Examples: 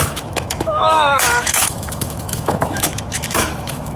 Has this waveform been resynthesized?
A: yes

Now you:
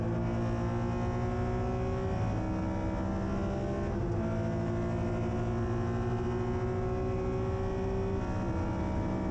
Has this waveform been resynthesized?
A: no